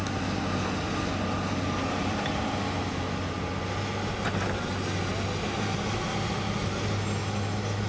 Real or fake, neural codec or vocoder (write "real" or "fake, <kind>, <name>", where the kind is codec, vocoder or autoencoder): real